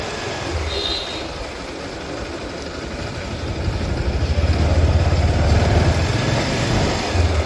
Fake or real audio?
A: real